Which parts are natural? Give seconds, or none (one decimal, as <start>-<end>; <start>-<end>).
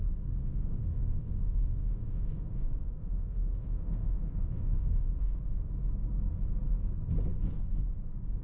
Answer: 0.0-0.4; 5.4-8.4